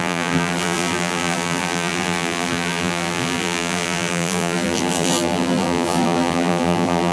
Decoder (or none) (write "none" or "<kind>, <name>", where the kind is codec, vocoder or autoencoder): vocoder, BigVGAN v2